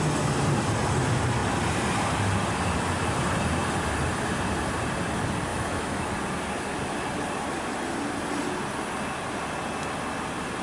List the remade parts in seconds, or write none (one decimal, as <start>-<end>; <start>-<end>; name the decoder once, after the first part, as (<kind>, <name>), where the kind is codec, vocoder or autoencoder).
5.5-6.1 (autoencoder, DAC-VAE)